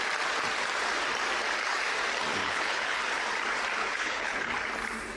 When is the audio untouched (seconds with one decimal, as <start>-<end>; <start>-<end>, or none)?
0.0-2.4; 3.0-3.8; 4.5-5.2